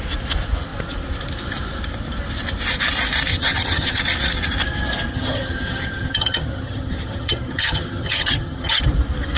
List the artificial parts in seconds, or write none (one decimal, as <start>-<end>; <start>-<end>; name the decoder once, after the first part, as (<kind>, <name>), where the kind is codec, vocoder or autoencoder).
3.3-4.0 (vocoder, HiFi-GAN); 5.1-8.8